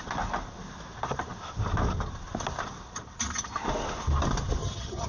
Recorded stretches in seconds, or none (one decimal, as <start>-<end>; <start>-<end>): 0.0-4.6